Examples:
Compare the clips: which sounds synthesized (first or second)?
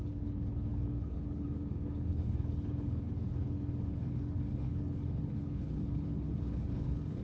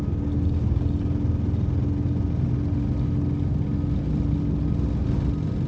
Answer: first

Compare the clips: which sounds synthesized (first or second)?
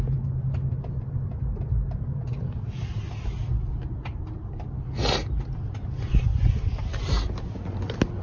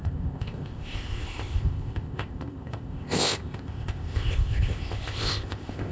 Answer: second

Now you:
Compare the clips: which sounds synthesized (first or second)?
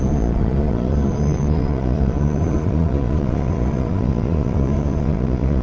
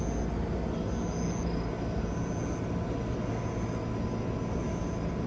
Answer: first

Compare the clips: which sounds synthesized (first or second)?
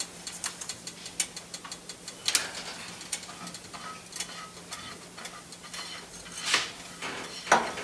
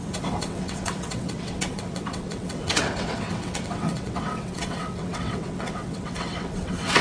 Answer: second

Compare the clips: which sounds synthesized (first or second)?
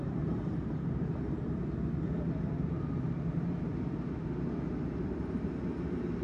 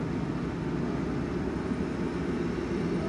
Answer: first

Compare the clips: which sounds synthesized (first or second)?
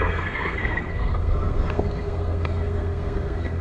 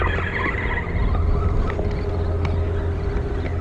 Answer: first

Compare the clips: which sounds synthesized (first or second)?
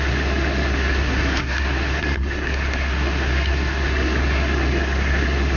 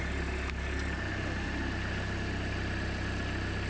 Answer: first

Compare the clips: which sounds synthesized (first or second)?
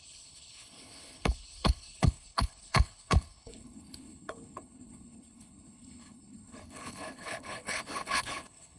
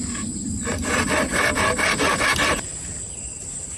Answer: first